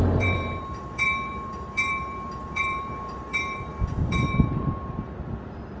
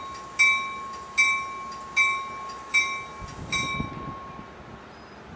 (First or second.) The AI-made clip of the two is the first